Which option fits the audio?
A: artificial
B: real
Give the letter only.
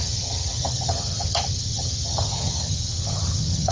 A